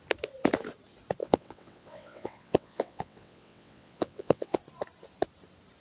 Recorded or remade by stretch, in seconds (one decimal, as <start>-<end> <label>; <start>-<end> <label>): 0.0-1.2 recorded; 1.2-4.6 remade; 4.6-5.8 recorded